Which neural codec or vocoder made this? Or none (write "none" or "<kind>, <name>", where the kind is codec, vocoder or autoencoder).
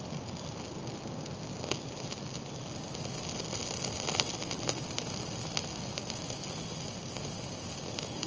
none